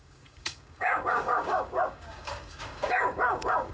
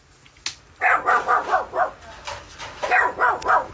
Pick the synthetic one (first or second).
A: first